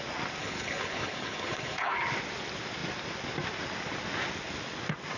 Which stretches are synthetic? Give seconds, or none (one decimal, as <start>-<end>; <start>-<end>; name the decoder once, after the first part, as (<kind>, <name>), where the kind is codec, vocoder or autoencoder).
0.4-1.9 (codec, HILCodec)